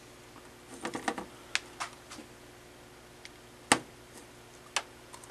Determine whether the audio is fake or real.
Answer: real